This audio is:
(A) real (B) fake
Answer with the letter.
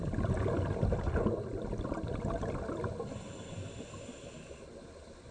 A